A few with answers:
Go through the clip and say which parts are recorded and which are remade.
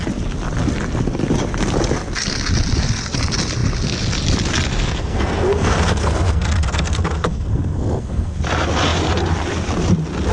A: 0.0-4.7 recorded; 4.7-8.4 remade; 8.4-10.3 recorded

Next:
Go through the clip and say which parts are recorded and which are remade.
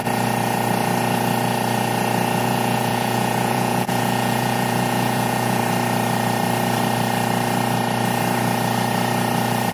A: 0.0-2.4 recorded; 2.4-5.6 remade; 5.6-9.7 recorded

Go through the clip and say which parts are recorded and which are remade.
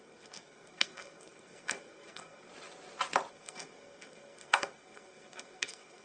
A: 0.0-2.5 remade; 2.5-3.3 recorded; 3.3-6.0 remade